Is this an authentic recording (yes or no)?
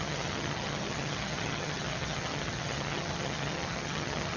no